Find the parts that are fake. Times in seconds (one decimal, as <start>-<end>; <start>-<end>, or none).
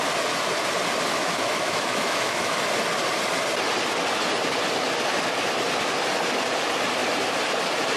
1.1-2.6